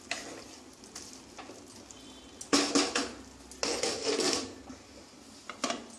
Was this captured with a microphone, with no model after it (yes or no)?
yes